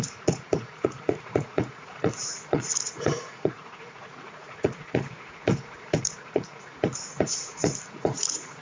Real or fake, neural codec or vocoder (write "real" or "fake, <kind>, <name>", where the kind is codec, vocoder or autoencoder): fake, vocoder, Vocos